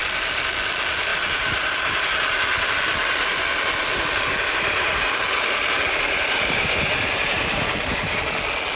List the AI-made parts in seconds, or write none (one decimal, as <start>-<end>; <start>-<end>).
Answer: 1.1-2.1; 4.5-8.2